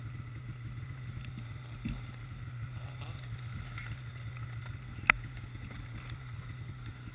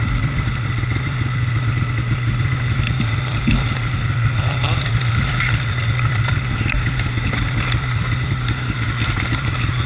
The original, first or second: first